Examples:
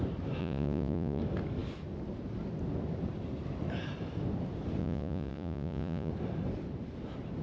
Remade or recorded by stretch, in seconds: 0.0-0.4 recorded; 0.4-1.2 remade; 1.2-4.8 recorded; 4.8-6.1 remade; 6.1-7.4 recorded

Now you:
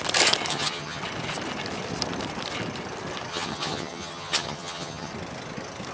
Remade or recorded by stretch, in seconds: 0.0-0.5 recorded; 0.5-1.0 remade; 1.0-3.3 recorded; 3.3-5.1 remade; 5.1-5.9 recorded

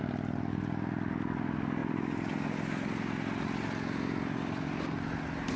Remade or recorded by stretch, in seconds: 0.0-5.6 recorded

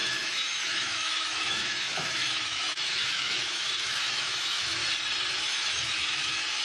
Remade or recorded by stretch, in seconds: 0.0-4.8 remade; 4.8-5.3 recorded; 5.3-6.6 remade

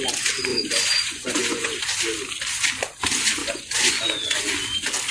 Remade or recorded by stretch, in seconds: 0.0-0.5 recorded; 0.5-1.8 remade; 1.8-3.4 recorded; 3.4-4.5 remade; 4.5-5.1 recorded

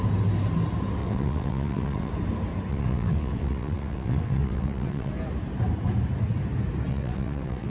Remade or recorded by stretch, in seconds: 0.0-1.0 recorded; 1.0-2.1 remade; 2.1-2.7 recorded; 2.7-5.1 remade; 5.1-6.9 recorded; 6.9-7.7 remade